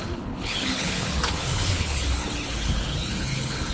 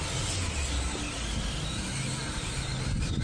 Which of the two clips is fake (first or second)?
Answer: first